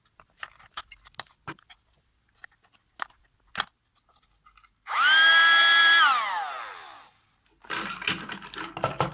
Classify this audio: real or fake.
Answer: real